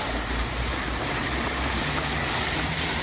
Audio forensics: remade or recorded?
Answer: remade